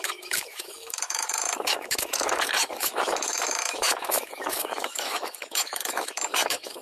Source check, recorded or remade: remade